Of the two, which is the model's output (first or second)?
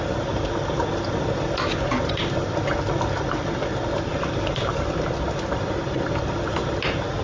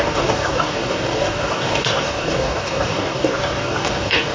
second